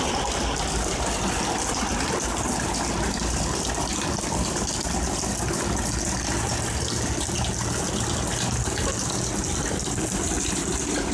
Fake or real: real